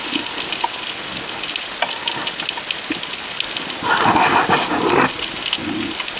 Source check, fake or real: real